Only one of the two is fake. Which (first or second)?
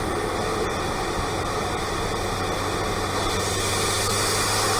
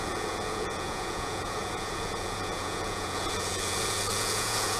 second